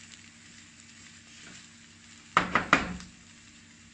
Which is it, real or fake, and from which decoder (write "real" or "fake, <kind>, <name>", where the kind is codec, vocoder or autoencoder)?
fake, vocoder, BigVGAN v2